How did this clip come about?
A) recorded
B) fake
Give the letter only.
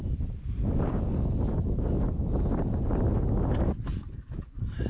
A